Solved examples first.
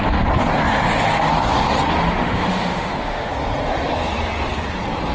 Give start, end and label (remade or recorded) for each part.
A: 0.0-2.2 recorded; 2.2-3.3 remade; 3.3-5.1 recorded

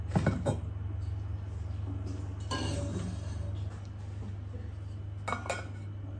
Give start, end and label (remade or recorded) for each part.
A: 0.0-6.2 recorded

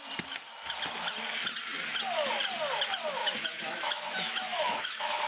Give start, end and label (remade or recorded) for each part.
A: 0.0-3.2 recorded; 3.2-5.3 remade

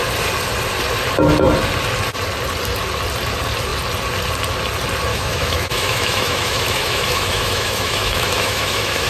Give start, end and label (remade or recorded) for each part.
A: 0.0-5.1 recorded; 5.1-9.1 remade

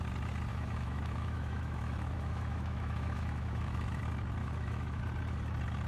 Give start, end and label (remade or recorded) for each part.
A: 0.0-0.5 recorded; 0.5-4.0 remade; 4.0-4.4 recorded; 4.4-5.0 remade; 5.0-5.9 recorded

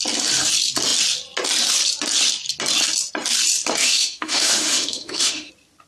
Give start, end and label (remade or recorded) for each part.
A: 0.0-3.8 recorded; 3.8-5.5 remade; 5.5-5.9 recorded

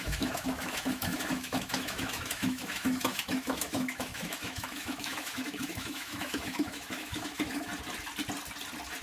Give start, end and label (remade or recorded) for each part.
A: 0.0-7.7 remade; 7.7-9.0 recorded

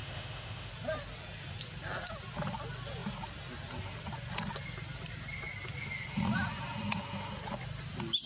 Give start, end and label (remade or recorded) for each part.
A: 0.0-0.7 remade; 0.7-8.3 recorded